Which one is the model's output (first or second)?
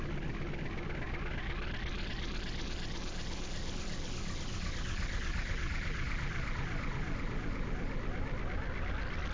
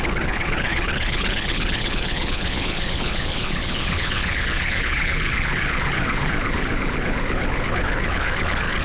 second